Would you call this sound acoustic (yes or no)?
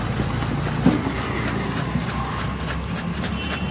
yes